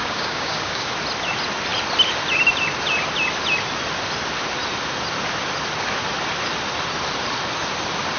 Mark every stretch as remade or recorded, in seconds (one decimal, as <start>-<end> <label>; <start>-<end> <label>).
0.0-0.9 remade; 0.9-8.2 recorded